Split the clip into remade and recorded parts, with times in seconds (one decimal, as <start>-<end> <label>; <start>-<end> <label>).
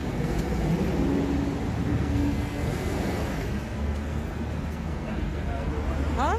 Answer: 0.0-0.6 remade; 0.6-1.9 recorded; 1.9-5.7 remade; 5.7-6.4 recorded